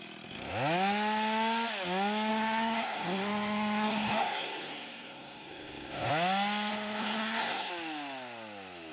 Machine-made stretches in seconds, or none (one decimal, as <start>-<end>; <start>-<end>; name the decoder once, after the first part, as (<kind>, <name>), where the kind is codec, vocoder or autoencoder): 2.3-6.1 (codec, SNAC); 6.7-7.7